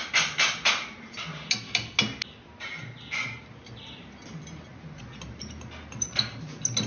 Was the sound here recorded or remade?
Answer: recorded